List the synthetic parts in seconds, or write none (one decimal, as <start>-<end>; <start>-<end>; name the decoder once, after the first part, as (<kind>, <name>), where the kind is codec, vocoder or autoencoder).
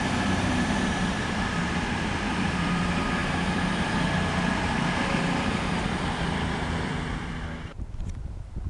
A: 0.0-8.7 (vocoder, BigVGAN v2)